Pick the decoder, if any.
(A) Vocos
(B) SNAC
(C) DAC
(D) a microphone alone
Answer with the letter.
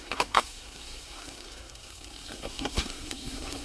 B